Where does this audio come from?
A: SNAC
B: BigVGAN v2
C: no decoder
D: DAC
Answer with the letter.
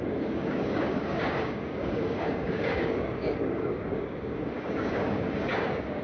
D